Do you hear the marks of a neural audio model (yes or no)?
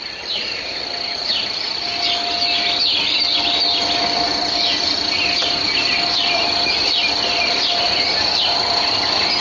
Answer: no